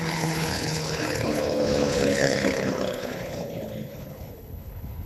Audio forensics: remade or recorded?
remade